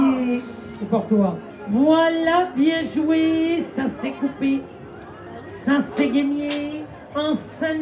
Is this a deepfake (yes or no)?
no